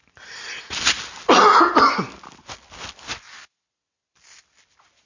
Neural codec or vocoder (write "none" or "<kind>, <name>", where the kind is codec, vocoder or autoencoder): none